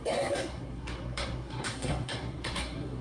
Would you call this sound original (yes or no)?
no